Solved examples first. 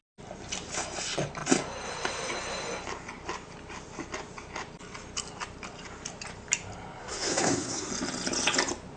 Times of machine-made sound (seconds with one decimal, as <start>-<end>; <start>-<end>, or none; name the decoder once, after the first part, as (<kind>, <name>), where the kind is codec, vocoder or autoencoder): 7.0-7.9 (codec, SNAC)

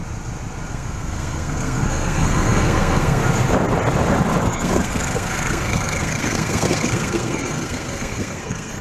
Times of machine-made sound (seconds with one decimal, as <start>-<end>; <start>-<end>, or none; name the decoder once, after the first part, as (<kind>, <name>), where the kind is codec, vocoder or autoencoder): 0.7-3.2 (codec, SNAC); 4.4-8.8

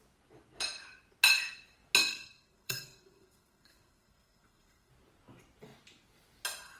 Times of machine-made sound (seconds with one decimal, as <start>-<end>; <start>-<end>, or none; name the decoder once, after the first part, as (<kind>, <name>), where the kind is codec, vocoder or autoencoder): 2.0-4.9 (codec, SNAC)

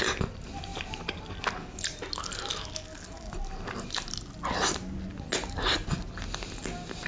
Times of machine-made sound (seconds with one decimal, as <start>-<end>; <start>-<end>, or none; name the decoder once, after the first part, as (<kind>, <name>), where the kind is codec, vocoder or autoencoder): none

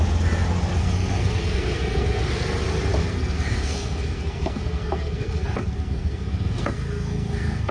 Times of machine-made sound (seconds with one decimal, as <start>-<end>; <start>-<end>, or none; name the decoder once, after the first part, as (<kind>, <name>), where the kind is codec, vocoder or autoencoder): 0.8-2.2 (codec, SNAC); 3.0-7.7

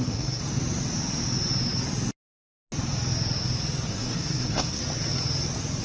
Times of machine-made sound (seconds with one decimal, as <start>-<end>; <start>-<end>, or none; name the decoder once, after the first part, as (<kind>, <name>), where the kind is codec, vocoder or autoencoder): 0.0-0.4 (codec, SNAC); 3.9-4.8

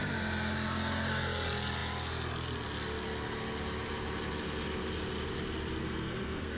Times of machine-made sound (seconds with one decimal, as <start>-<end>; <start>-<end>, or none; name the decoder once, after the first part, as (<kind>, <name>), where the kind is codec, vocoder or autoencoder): 5.8-6.6 (codec, SNAC)

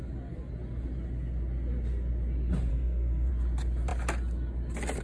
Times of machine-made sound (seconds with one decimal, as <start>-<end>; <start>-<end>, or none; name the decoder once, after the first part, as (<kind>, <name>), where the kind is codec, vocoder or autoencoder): 2.7-3.3 (codec, SNAC)